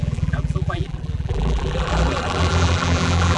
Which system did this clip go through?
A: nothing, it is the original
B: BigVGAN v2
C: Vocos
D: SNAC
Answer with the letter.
B